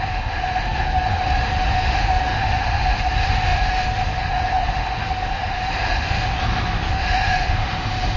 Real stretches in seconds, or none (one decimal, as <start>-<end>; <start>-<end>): 6.3-6.9